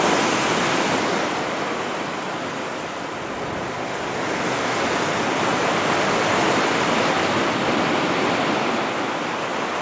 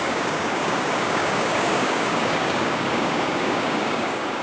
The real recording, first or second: first